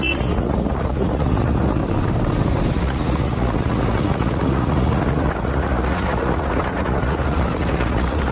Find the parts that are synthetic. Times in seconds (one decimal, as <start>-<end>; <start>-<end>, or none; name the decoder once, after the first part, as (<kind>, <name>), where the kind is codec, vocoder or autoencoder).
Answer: 0.0-1.8 (vocoder, Vocos); 2.7-8.3